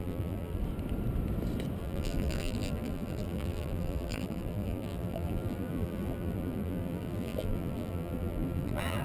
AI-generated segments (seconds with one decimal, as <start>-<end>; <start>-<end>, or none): 0.0-0.6; 1.8-9.0